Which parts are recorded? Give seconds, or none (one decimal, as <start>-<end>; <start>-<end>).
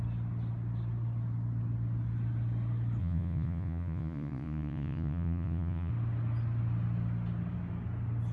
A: 0.0-3.0; 5.9-8.3